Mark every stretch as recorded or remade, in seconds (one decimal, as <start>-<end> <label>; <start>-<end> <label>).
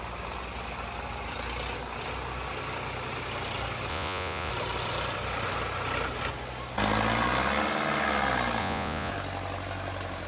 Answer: 0.0-3.9 recorded; 3.9-4.5 remade; 4.5-8.6 recorded; 8.6-9.1 remade; 9.1-10.3 recorded